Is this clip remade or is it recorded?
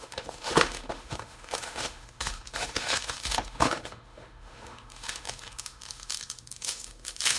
remade